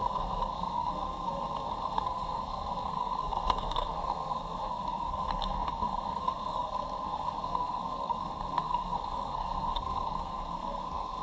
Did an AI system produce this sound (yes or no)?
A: yes